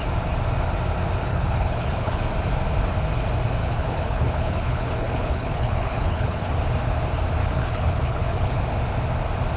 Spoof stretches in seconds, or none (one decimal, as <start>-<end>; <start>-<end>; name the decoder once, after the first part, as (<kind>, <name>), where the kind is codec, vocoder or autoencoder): 1.3-2.2 (codec, HILCodec); 3.6-6.5; 7.4-8.6